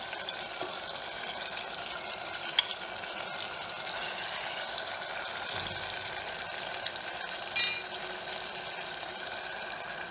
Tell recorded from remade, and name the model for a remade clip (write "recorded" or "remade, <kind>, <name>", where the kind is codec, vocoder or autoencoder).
recorded